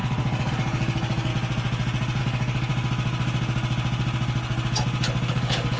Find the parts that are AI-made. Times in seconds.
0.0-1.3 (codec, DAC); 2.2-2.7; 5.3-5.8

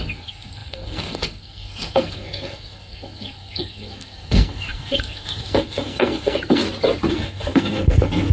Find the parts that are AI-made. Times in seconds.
0.0-6.6 (codec, SNAC); 7.1-8.3

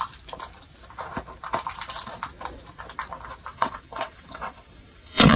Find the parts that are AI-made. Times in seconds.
3.5-5.4 (vocoder, WaveNeXt)

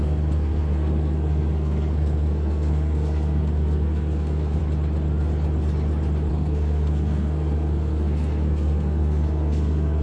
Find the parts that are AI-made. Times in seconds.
0.0-4.6 (codec, SNAC); 6.3-10.0

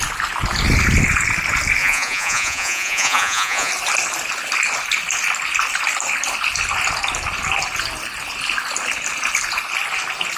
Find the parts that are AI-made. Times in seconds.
1.8-3.7 (vocoder, Vocos)

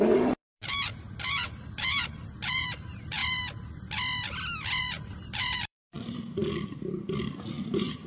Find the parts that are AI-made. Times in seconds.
0.0-3.2 (vocoder, BigVGAN v2); 4.8-6.4; 7.5-8.1